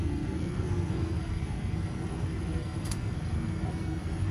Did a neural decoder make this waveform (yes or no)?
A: yes